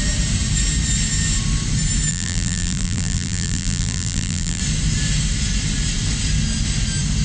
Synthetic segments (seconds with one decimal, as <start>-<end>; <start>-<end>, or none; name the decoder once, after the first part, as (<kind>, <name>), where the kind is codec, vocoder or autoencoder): 2.1-4.6 (vocoder, BigVGAN v2)